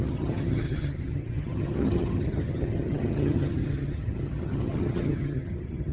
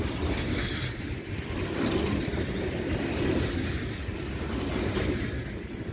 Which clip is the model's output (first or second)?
first